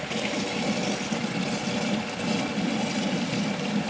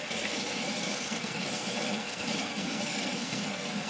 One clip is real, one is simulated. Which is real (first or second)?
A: first